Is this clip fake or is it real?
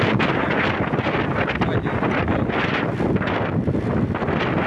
real